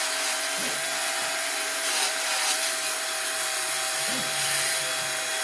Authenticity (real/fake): real